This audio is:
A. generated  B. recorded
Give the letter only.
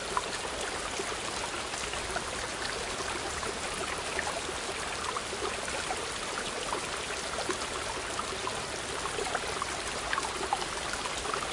B